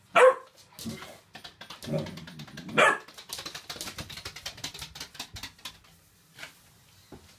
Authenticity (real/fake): real